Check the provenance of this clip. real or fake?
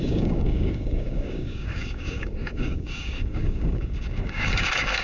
fake